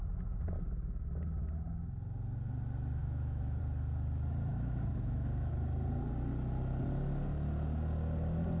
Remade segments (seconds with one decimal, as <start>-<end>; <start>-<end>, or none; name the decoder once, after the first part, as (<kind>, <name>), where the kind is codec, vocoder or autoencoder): 3.0-3.6 (autoencoder, DAC-VAE); 4.5-5.5